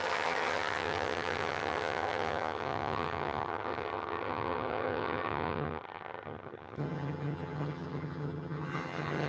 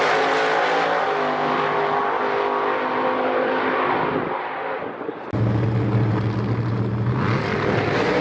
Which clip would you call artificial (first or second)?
first